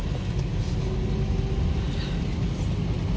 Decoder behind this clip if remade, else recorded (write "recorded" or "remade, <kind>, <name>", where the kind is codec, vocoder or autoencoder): recorded